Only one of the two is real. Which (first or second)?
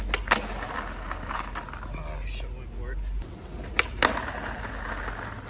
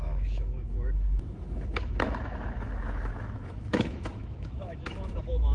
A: first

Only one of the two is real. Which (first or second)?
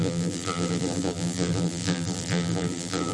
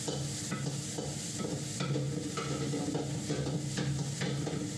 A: second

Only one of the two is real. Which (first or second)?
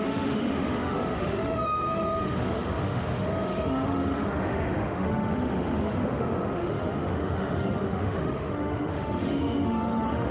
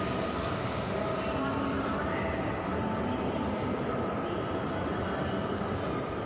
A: second